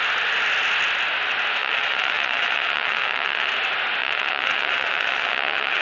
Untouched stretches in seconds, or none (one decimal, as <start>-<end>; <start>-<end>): 0.0-1.6; 3.5-4.0